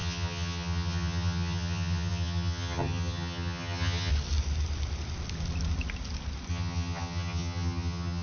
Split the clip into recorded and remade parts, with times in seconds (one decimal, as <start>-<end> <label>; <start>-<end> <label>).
0.0-4.1 remade; 4.1-6.5 recorded; 6.5-8.2 remade

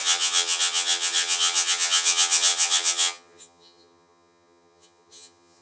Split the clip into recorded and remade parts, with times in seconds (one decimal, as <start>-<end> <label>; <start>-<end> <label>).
0.0-5.6 remade

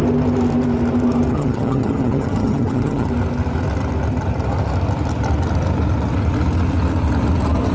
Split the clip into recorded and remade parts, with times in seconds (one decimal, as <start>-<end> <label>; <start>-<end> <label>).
0.0-1.3 recorded; 1.3-3.1 remade; 3.1-7.7 recorded